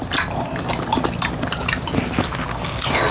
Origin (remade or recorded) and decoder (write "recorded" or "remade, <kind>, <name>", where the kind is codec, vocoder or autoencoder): recorded